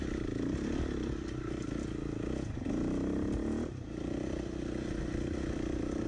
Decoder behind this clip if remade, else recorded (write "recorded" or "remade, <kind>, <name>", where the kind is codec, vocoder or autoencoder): recorded